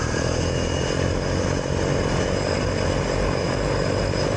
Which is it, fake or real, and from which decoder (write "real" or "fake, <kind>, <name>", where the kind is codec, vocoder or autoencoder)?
real